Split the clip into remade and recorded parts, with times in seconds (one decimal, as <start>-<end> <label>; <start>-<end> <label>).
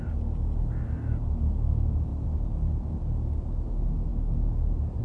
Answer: 0.0-5.0 recorded